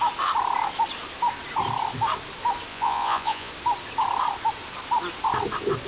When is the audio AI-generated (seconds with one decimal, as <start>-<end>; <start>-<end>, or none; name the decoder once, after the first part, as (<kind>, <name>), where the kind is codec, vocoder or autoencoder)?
2.7-3.5 (vocoder, Vocos)